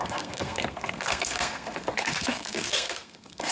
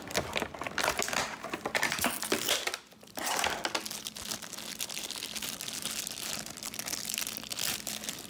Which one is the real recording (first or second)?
second